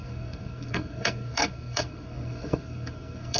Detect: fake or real fake